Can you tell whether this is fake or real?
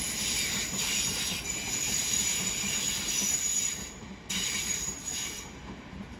fake